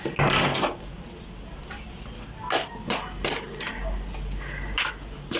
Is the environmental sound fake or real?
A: real